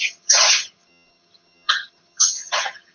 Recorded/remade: remade